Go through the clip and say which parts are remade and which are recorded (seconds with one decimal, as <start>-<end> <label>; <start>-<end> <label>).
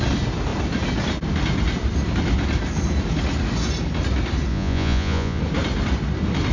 0.0-4.5 recorded; 4.5-5.4 remade; 5.4-6.5 recorded